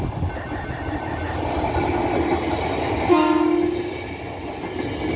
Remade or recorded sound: recorded